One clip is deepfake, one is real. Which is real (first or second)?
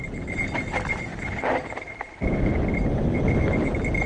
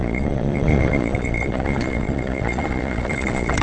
first